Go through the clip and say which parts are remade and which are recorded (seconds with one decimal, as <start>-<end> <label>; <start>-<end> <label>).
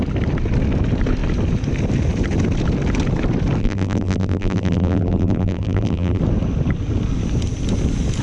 0.0-3.6 recorded; 3.6-6.2 remade; 6.2-8.2 recorded